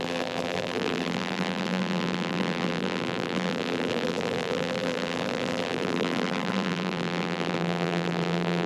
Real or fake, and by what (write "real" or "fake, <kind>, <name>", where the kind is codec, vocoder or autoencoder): fake, vocoder, BigVGAN v2